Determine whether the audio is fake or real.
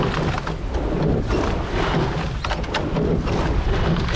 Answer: real